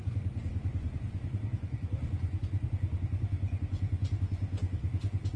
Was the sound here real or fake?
fake